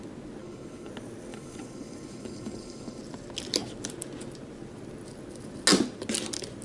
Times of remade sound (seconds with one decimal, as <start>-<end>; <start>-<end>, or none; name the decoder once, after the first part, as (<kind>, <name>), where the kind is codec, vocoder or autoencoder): 0.4-0.9 (codec, HILCodec); 1.3-3.0